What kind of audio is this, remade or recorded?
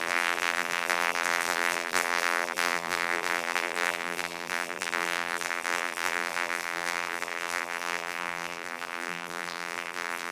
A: remade